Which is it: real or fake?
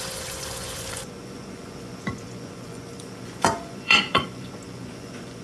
fake